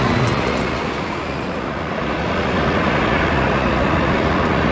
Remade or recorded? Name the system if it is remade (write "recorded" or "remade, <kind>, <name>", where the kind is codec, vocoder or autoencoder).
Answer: remade, vocoder, Vocos